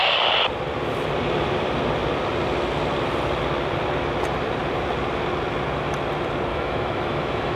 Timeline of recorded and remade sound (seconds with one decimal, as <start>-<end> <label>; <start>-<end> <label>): 0.0-6.5 recorded; 6.5-7.6 remade